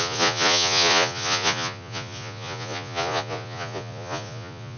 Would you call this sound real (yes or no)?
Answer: no